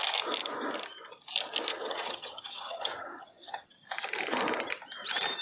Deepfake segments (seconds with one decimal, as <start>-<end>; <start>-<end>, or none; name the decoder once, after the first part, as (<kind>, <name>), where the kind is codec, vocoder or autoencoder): 1.7-3.7 (vocoder, HiFi-GAN)